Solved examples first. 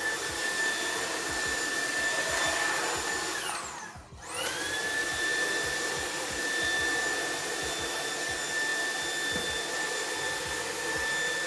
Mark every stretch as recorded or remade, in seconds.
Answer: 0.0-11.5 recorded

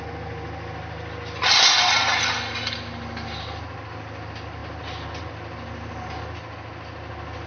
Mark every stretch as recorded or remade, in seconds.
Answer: 0.0-7.5 recorded

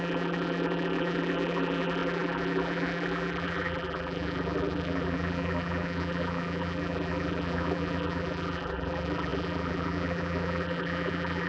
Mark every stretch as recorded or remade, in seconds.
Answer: 0.0-11.5 remade

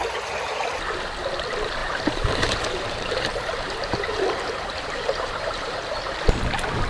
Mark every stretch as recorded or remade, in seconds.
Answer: 0.0-1.8 recorded; 1.8-5.9 remade; 5.9-6.9 recorded

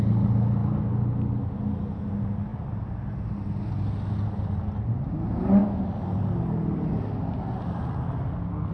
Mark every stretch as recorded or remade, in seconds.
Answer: 0.0-8.7 recorded

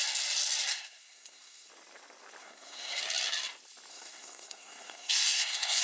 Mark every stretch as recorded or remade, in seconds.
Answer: 0.0-0.7 recorded; 0.7-1.7 remade; 1.7-2.4 recorded; 2.4-3.0 remade; 3.0-3.9 recorded; 3.9-5.8 remade

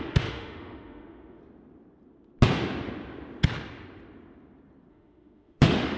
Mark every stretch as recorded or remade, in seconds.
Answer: 0.0-1.4 remade; 1.4-4.9 recorded; 4.9-6.0 remade

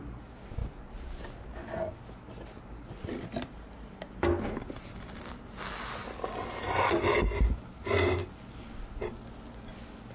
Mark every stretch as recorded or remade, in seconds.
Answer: 0.0-10.1 recorded